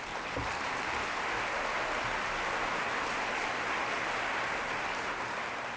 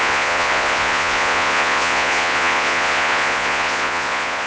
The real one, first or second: first